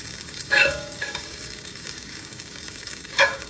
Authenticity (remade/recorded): remade